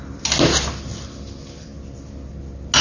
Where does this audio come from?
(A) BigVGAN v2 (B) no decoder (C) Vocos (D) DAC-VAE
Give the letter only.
B